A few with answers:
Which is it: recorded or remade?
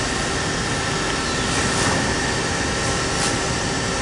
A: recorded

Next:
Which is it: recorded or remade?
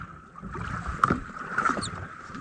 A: recorded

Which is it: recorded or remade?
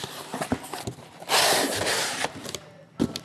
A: recorded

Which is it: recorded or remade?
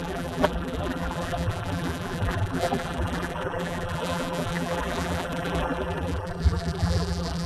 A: remade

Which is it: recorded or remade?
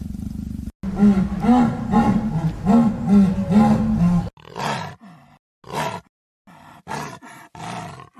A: recorded